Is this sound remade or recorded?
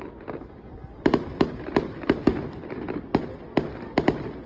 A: recorded